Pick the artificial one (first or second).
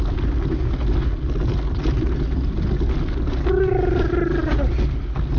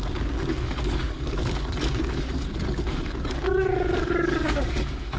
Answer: second